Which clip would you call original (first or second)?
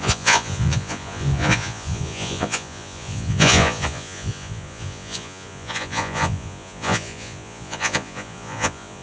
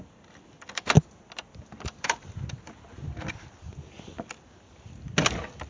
second